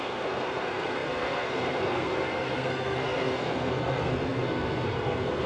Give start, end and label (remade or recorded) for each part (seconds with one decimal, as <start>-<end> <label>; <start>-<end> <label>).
0.0-5.5 remade